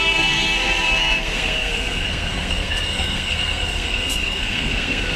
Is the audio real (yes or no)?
no